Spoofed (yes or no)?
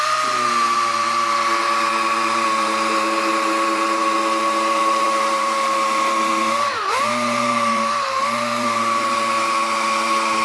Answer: yes